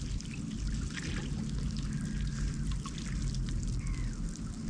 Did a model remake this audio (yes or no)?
no